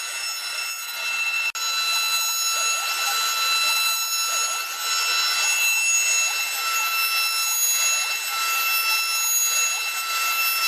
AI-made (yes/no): no